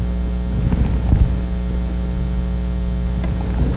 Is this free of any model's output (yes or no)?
yes